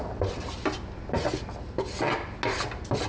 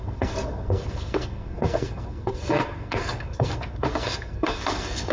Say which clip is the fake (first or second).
second